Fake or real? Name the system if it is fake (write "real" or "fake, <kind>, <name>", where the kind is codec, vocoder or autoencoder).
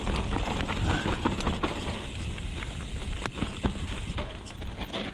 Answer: real